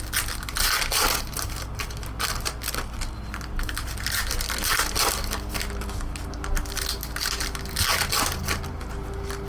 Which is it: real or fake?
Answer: real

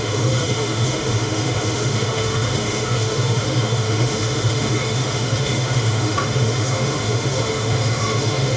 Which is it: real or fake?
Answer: fake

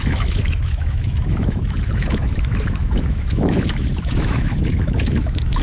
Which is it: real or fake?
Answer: fake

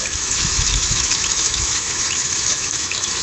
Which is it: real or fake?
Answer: fake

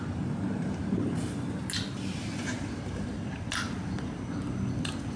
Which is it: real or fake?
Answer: real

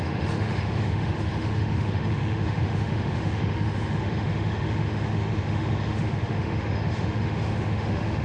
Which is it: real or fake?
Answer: fake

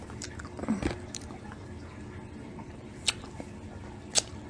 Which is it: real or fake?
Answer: real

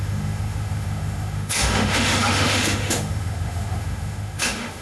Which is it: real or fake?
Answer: fake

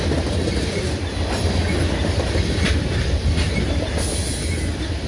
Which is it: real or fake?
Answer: real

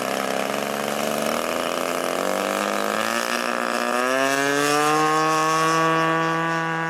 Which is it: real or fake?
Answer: real